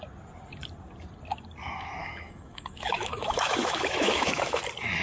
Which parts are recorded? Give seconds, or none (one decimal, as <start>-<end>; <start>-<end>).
0.0-1.6; 4.6-5.0